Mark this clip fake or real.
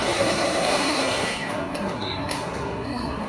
fake